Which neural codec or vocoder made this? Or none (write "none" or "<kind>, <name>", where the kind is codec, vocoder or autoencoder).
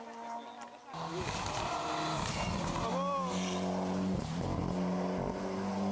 none